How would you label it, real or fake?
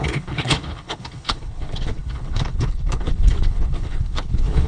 fake